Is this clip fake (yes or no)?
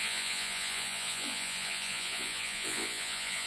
yes